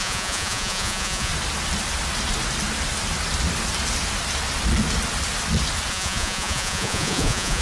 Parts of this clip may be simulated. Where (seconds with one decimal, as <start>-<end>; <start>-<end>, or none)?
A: 0.0-1.3; 5.9-7.6